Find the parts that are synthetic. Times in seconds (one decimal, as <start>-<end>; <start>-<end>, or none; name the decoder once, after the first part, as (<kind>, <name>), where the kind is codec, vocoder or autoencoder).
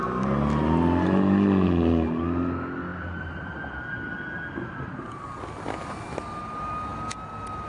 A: 2.9-5.2 (vocoder, BigVGAN v2)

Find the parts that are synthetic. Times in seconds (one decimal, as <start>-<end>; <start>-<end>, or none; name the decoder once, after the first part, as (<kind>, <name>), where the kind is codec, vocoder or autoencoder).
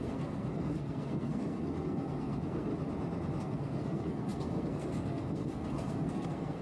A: 0.0-2.7 (codec, SNAC); 3.4-6.6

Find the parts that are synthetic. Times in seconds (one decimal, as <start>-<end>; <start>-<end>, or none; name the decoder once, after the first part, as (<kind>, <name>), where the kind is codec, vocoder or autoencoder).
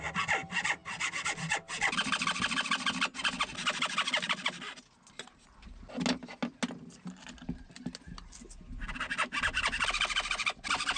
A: none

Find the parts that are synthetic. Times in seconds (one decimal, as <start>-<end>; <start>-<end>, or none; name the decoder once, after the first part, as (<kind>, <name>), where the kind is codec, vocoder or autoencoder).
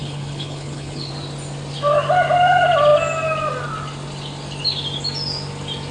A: 0.0-1.1 (codec, HILCodec)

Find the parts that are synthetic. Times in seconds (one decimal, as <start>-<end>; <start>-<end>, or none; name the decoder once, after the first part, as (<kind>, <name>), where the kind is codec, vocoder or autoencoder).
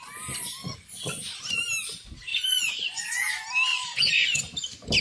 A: 0.6-1.6 (vocoder, Vocos); 2.3-3.3; 3.7-4.4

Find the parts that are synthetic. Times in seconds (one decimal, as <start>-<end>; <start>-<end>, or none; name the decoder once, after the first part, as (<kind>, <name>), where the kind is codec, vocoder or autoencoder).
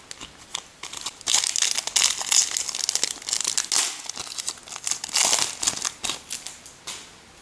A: 0.7-1.5 (vocoder, BigVGAN v2)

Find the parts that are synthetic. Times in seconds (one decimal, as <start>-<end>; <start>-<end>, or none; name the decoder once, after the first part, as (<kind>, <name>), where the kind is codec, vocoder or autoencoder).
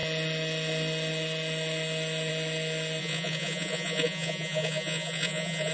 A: 3.0-5.7 (vocoder, Vocos)